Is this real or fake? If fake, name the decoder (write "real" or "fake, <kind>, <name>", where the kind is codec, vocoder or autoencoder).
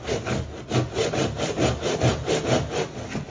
real